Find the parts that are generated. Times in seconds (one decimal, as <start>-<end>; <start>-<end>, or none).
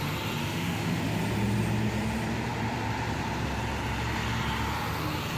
0.4-1.0